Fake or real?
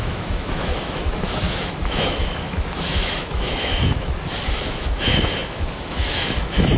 fake